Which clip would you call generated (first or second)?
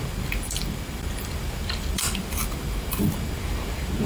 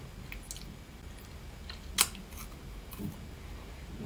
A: first